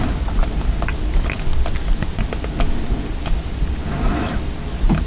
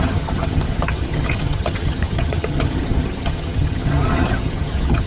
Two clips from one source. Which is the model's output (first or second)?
second